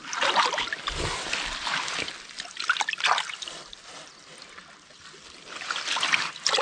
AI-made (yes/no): no